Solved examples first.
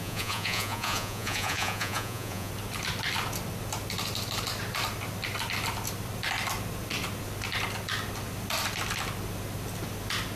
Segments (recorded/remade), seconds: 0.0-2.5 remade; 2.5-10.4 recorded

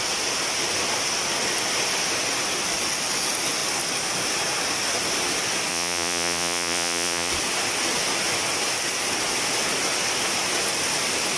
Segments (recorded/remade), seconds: 0.0-5.7 recorded; 5.7-7.3 remade; 7.3-11.4 recorded

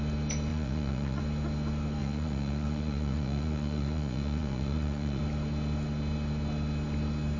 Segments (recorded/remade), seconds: 0.0-0.5 recorded; 0.5-1.2 remade; 1.2-2.0 recorded; 2.0-5.2 remade; 5.2-7.4 recorded

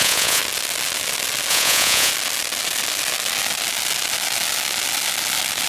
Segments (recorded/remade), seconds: 0.0-0.4 remade; 0.4-1.5 recorded; 1.5-2.1 remade; 2.1-5.7 recorded

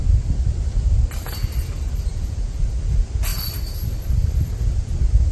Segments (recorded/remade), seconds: 0.0-2.1 recorded; 2.1-2.7 remade; 2.7-5.3 recorded

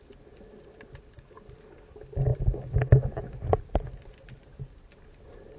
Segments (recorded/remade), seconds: 0.0-5.6 recorded

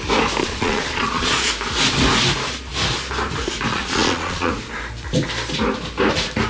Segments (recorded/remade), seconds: 0.0-0.4 recorded; 0.4-1.5 remade; 1.5-3.7 recorded; 3.7-4.5 remade; 4.5-6.5 recorded

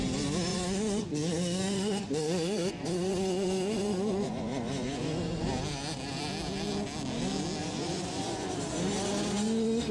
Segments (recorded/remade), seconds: 0.0-0.5 recorded; 0.5-2.7 remade; 2.7-3.1 recorded; 3.1-5.5 remade; 5.5-7.6 recorded; 7.6-8.5 remade; 8.5-9.9 recorded